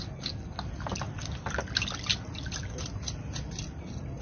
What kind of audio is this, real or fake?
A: real